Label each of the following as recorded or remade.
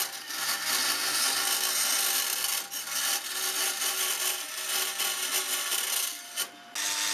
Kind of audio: recorded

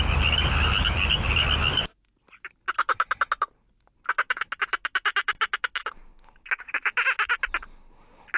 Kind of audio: recorded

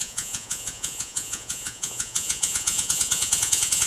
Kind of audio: remade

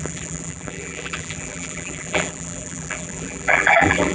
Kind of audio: remade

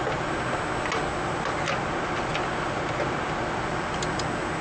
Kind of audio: recorded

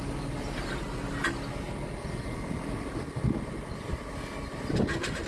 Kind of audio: recorded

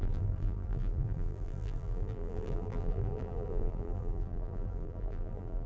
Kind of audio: remade